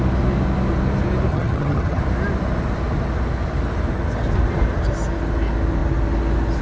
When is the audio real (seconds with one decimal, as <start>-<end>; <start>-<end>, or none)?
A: 0.0-1.3; 2.0-6.6